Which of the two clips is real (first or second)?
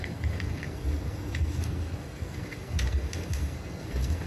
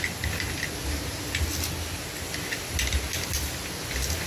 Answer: second